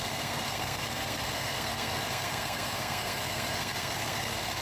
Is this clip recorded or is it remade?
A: remade